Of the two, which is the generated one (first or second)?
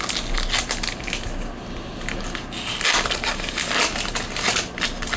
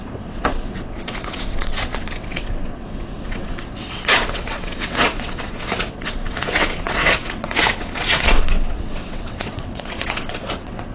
second